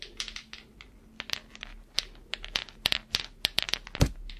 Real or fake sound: real